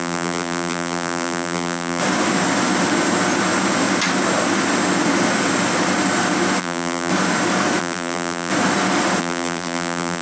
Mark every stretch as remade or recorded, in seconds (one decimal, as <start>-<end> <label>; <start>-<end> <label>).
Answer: 0.0-2.0 remade; 2.0-6.6 recorded; 6.6-7.1 remade; 7.1-7.8 recorded; 7.8-8.5 remade; 8.5-9.2 recorded; 9.2-10.2 remade